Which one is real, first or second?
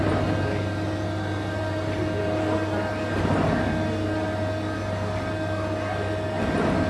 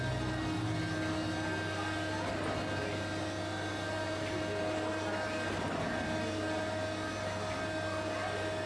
second